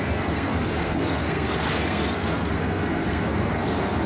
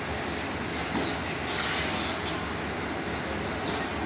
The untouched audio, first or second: second